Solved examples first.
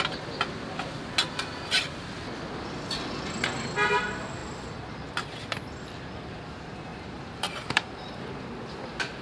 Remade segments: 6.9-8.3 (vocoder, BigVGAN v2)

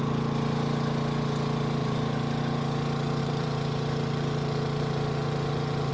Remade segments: 1.8-2.4 (vocoder, BigVGAN v2); 3.2-5.9

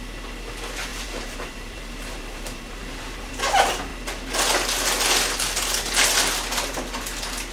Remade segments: 0.9-3.3 (vocoder, BigVGAN v2)

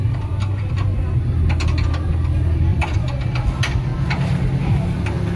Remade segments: 0.0-0.7 (vocoder, BigVGAN v2); 2.7-3.5

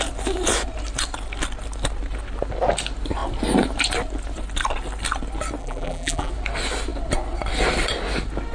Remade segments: 5.6-6.3 (vocoder, BigVGAN v2)

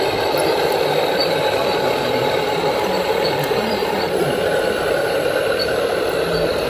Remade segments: 1.2-5.2 (vocoder, BigVGAN v2)

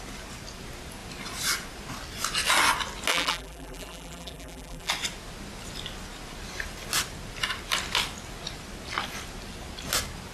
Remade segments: 3.1-4.9 (vocoder, BigVGAN v2)

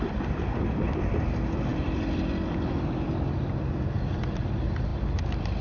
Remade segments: 0.0-5.6 (vocoder, BigVGAN v2)